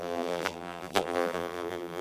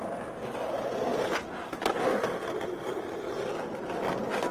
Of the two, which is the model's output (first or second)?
first